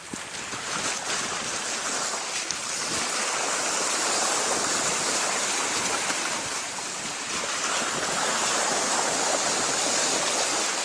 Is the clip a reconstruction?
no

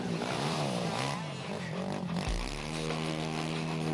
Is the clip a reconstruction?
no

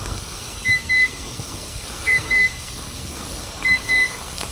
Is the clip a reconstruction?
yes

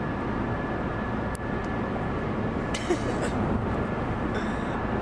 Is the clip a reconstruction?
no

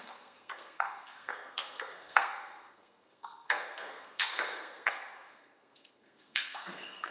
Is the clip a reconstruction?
yes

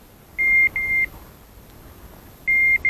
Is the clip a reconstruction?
no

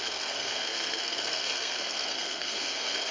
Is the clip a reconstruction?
yes